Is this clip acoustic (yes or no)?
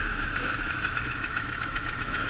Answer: no